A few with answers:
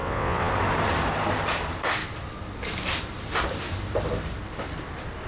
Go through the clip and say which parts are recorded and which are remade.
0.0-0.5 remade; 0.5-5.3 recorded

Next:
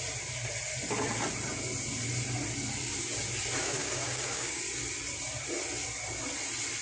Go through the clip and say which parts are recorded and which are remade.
0.0-3.6 recorded; 3.6-4.6 remade; 4.6-6.8 recorded

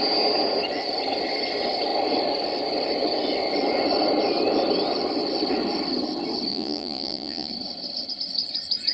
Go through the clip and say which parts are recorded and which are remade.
0.0-6.5 recorded; 6.5-7.5 remade; 7.5-8.9 recorded

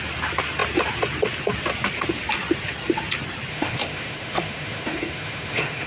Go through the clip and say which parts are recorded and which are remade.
0.0-3.5 recorded; 3.5-5.9 remade

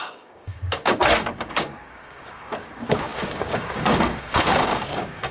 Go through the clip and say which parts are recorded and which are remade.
0.0-5.3 remade